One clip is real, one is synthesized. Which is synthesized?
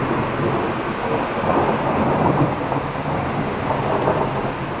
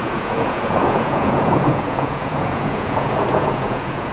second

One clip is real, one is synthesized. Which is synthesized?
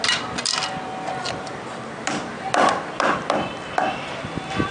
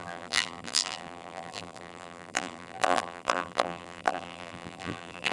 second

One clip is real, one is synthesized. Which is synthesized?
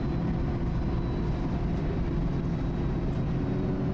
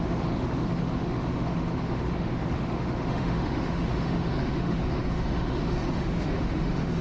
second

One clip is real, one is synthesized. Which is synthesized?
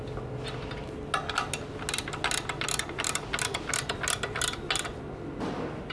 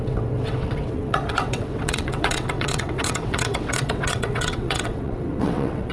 second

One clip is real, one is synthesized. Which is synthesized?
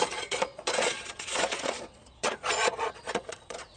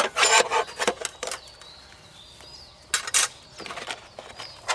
first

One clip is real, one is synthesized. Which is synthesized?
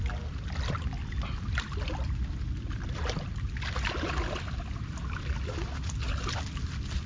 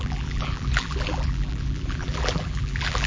second